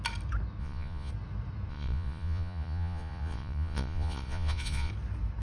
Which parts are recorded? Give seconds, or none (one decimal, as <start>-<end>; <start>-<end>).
0.0-0.6; 1.1-1.7; 4.9-5.4